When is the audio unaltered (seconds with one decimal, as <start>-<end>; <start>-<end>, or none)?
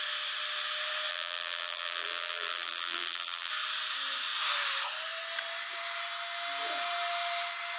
0.0-1.1; 3.5-7.8